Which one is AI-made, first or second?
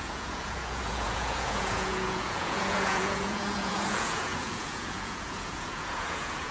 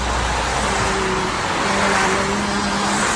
first